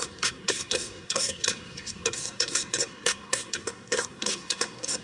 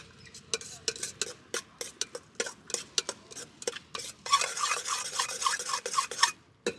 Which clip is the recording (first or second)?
second